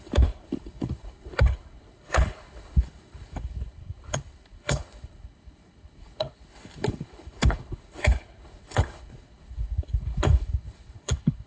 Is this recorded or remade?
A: remade